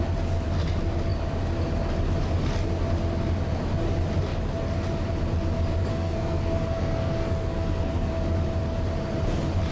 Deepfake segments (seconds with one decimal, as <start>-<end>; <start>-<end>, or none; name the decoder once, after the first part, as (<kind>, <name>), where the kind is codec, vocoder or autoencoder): 5.9-8.1 (codec, SNAC)